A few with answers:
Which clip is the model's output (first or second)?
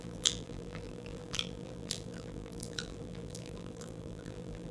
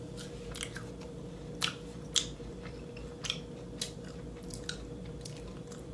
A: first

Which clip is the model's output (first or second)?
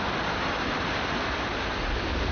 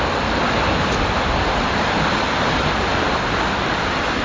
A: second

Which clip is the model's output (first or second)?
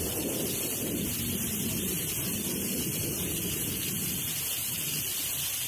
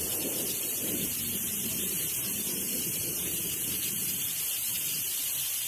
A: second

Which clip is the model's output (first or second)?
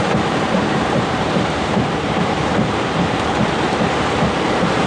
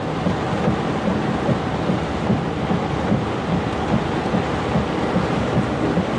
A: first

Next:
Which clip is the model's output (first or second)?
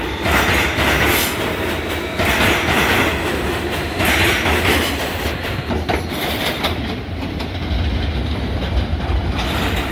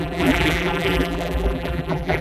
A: second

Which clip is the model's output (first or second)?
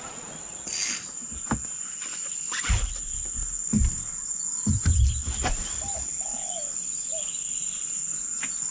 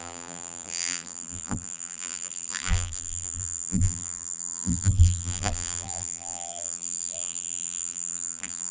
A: second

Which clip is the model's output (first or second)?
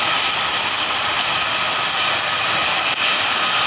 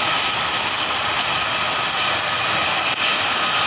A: first